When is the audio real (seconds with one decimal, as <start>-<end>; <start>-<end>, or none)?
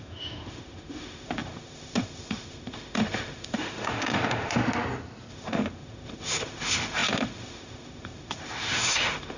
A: 4.6-5.3